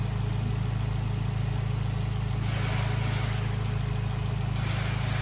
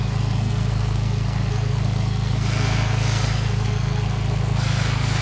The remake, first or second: second